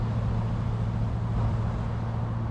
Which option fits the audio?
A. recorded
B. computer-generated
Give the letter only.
A